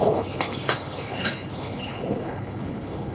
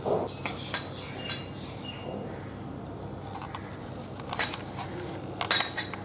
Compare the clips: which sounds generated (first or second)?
first